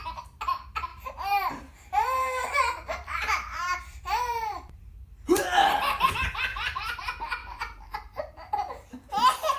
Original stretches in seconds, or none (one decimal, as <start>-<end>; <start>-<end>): 0.0-0.9; 6.1-6.5; 7.0-7.4; 8.2-9.6

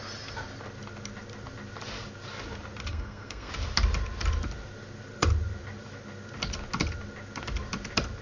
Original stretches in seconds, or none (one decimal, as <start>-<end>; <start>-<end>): 0.0-2.9; 3.5-8.2

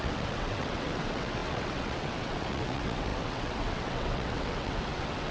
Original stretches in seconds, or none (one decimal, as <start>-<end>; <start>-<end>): none

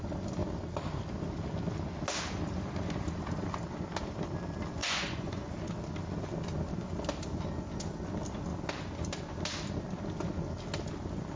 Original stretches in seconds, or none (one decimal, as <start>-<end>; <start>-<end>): 0.0-4.8; 5.5-11.4

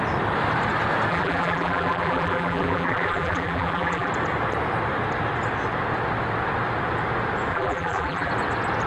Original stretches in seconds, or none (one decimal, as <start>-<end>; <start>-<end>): 0.0-1.1; 4.1-7.5; 8.3-8.9